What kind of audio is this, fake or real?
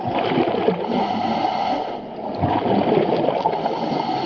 real